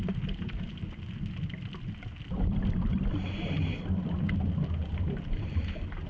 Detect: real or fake real